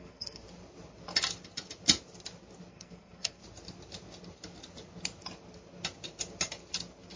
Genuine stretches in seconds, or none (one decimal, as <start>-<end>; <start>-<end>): 0.4-2.7; 3.4-7.2